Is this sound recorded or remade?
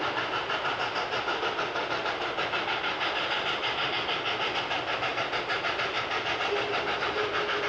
recorded